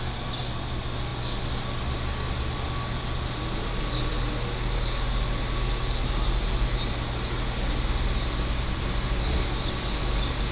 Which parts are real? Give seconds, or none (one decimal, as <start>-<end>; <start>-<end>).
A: 0.0-10.5